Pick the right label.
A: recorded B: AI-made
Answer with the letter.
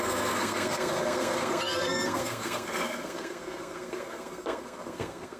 B